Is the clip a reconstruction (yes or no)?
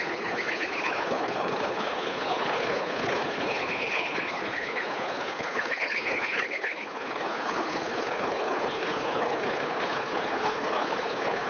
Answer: yes